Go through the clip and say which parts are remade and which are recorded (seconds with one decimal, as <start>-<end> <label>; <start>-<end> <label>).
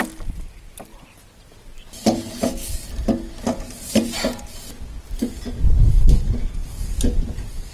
0.0-7.7 recorded